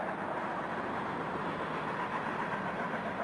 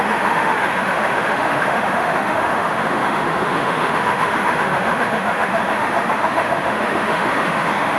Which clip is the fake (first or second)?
second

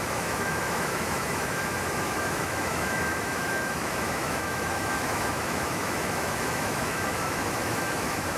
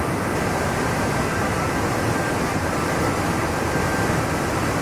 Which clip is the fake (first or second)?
first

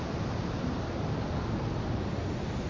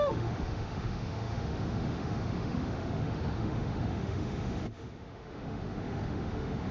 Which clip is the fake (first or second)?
second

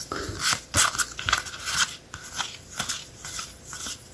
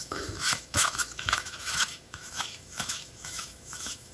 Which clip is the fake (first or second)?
second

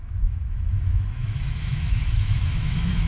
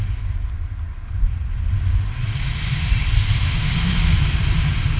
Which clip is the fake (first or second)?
first